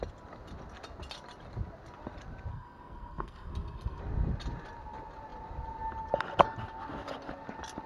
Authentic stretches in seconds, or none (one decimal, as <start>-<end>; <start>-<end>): 0.0-2.5; 4.0-7.9